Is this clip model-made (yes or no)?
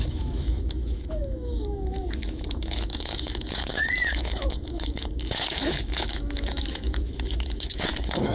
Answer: yes